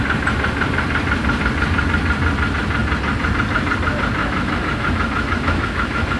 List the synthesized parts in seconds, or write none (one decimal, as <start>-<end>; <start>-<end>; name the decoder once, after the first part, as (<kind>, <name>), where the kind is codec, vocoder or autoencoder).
4.2-6.2 (autoencoder, DAC-VAE)